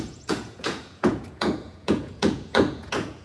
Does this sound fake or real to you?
fake